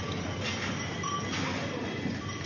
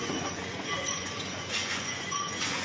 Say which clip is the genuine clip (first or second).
first